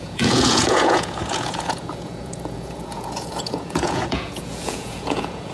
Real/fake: fake